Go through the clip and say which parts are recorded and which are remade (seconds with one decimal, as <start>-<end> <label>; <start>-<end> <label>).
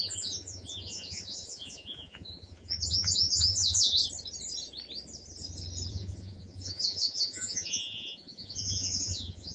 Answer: 0.0-4.0 remade; 4.0-5.9 recorded; 5.9-9.5 remade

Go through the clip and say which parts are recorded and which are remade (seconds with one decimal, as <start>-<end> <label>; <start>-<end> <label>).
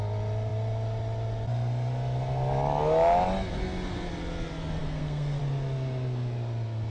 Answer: 0.0-4.8 recorded; 4.8-5.4 remade; 5.4-6.9 recorded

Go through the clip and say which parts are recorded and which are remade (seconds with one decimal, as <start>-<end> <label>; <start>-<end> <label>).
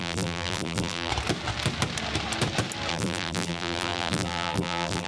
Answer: 0.0-1.1 remade; 1.1-2.9 recorded; 2.9-5.1 remade